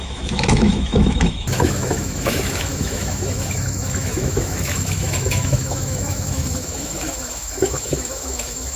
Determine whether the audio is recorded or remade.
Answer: remade